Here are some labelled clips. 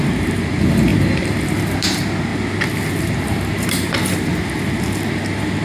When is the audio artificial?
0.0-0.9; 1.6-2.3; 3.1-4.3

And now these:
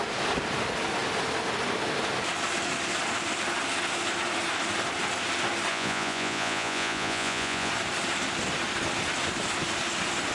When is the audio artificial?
5.7-7.7

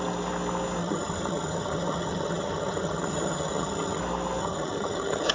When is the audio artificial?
0.8-4.0; 4.4-5.3

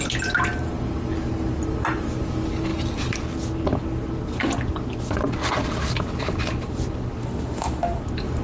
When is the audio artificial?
7.2-8.0

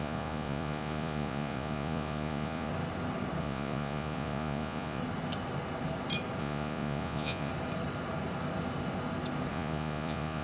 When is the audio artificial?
0.0-2.7; 3.4-5.0; 6.4-7.5; 9.5-10.4

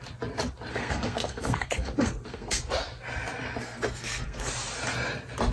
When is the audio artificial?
0.7-2.6; 3.6-4.5

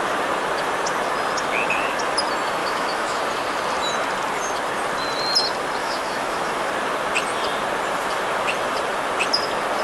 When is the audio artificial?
2.6-3.2; 5.8-6.7